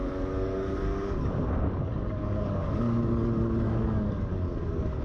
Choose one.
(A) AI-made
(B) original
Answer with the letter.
A